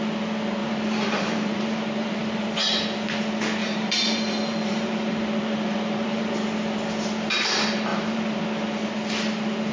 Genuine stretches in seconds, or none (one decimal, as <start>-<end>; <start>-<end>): 0.0-0.6; 2.5-3.6; 6.3-7.9; 8.4-9.7